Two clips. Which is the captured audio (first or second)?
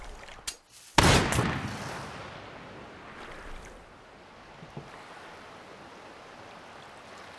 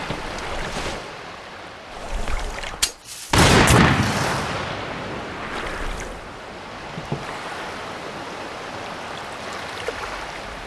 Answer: first